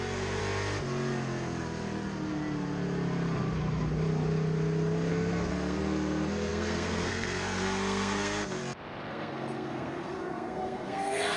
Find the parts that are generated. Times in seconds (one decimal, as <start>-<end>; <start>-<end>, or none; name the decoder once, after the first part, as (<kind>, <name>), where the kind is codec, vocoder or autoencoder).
0.0-0.4 (codec, SNAC); 5.1-8.6; 9.1-11.4